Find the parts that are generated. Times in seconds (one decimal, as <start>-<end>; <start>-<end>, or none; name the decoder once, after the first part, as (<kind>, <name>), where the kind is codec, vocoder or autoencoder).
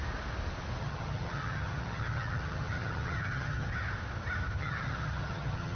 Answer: 0.8-3.7 (vocoder, HiFi-GAN); 4.6-5.8